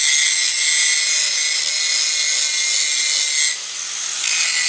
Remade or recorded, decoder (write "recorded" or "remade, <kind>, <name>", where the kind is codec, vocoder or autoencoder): recorded